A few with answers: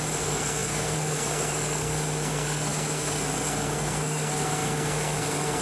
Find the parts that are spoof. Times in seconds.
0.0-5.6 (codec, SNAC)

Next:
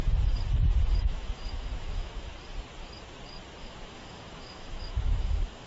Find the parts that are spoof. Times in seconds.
1.0-2.3 (autoencoder, DAC-VAE); 3.6-5.7

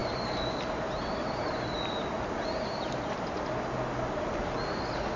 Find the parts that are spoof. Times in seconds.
none